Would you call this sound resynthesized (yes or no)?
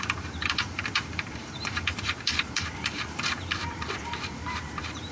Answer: yes